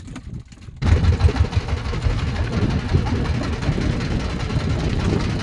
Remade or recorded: recorded